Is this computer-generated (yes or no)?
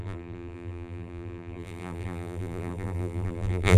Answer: yes